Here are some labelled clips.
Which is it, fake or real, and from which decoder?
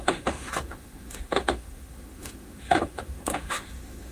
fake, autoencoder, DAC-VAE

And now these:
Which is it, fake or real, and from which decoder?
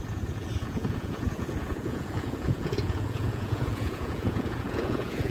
fake, vocoder, Vocos